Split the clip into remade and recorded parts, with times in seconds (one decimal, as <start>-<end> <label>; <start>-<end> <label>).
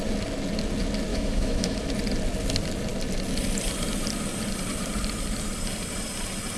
0.0-1.1 recorded; 1.1-1.9 remade; 1.9-6.6 recorded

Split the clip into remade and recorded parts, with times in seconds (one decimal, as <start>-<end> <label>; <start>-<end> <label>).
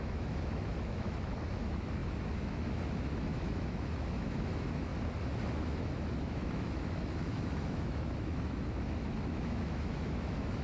0.0-4.9 remade; 4.9-5.6 recorded; 5.6-10.6 remade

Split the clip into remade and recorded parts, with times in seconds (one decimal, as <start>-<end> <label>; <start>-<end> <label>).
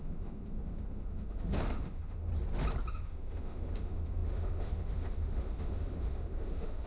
0.0-2.3 remade; 2.3-2.9 recorded; 2.9-6.9 remade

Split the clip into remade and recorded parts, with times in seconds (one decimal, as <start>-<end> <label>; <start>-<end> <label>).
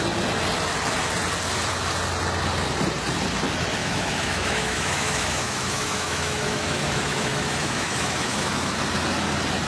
0.0-3.8 recorded; 3.8-8.7 remade; 8.7-9.7 recorded